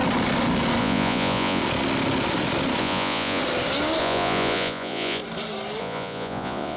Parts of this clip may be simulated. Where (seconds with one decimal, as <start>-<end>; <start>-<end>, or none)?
0.8-1.6; 2.8-3.4; 4.0-5.2; 5.8-6.8